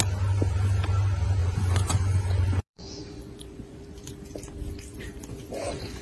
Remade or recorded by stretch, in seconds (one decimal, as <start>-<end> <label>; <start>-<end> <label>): 0.0-1.4 recorded; 1.4-4.1 remade; 4.1-4.9 recorded; 4.9-6.0 remade